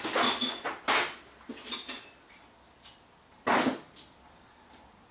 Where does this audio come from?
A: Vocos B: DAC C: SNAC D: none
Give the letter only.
D